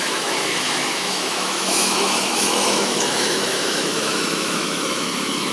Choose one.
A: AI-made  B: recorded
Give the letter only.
A